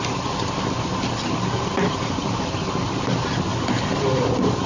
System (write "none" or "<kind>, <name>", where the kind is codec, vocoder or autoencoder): none